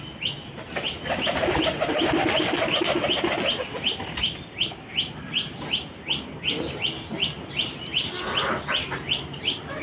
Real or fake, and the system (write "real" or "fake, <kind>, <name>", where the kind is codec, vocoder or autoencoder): real